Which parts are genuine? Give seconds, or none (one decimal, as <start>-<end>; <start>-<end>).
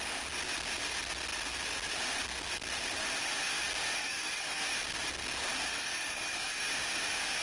0.0-4.0; 4.6-5.7; 6.6-7.4